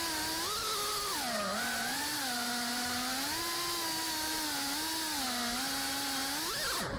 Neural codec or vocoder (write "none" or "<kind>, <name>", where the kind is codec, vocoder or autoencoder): none